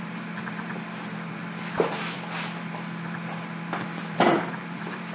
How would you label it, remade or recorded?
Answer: remade